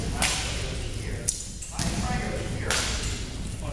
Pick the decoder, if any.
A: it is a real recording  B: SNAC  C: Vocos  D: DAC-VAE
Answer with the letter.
A